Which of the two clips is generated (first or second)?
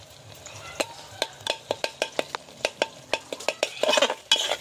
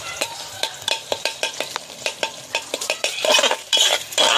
second